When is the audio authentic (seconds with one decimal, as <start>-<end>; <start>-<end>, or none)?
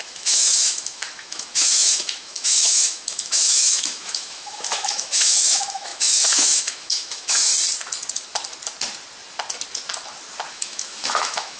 7.5-10.5